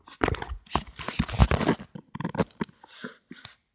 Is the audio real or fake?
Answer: real